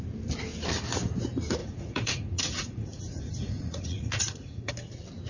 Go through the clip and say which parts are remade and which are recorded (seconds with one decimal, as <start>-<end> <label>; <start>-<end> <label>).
0.0-1.6 recorded; 1.6-4.7 remade; 4.7-5.3 recorded